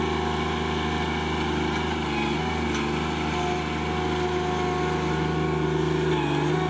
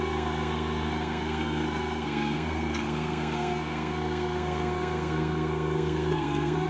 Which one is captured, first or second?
first